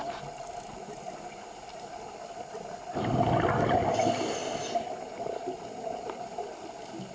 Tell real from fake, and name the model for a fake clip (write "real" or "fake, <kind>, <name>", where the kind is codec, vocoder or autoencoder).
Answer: real